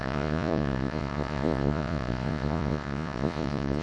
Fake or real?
fake